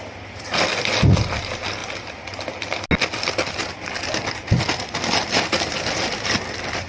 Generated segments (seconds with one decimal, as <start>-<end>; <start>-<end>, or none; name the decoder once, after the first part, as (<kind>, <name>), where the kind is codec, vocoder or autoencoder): none